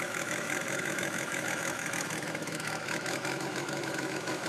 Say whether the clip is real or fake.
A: fake